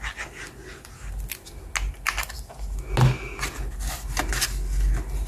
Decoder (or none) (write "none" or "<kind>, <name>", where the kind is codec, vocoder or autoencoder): none